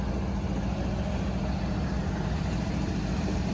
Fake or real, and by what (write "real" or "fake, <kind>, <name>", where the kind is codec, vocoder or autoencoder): real